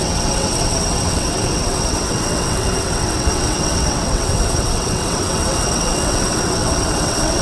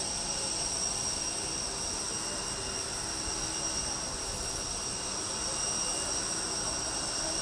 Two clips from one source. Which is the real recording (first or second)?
second